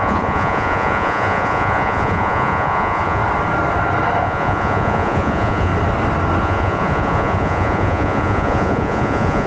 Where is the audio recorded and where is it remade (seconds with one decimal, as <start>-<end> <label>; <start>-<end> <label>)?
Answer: 0.0-3.2 remade; 3.2-4.2 recorded; 4.2-5.7 remade; 5.7-6.4 recorded; 6.4-9.5 remade